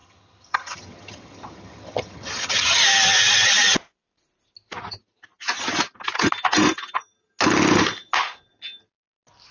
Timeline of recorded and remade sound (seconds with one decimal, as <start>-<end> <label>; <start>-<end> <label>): 0.0-2.8 remade; 2.8-9.5 recorded